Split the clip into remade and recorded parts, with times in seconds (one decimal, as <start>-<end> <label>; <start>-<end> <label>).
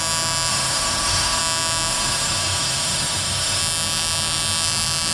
0.0-0.5 recorded; 0.5-1.4 remade; 1.4-1.9 recorded; 1.9-3.6 remade; 3.6-5.1 recorded